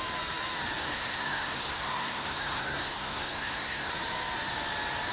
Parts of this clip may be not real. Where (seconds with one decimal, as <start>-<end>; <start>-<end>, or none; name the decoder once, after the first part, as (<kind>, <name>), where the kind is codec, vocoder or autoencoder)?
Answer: 0.8-3.9 (codec, SNAC)